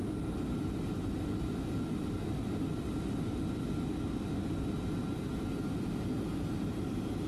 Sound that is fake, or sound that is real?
real